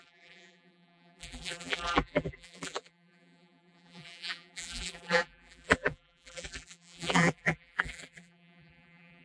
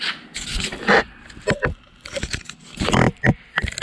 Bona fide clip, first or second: second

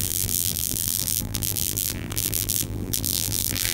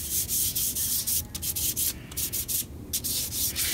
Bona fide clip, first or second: second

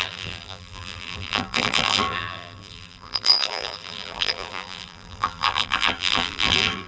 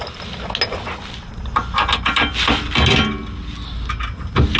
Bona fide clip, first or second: second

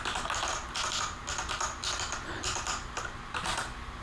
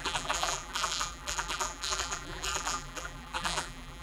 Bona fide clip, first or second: first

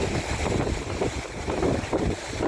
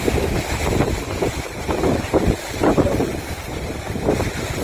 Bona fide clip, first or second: second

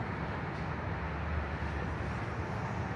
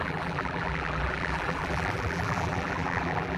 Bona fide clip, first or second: first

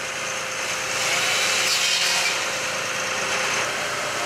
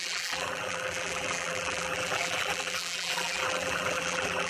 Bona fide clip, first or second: first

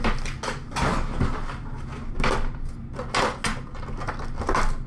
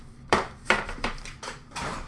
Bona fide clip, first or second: first